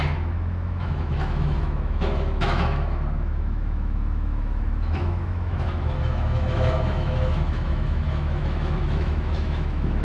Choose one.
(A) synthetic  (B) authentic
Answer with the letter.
A